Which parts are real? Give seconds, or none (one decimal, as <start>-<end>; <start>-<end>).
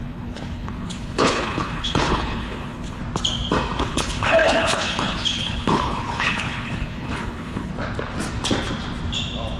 3.0-3.8; 7.7-9.6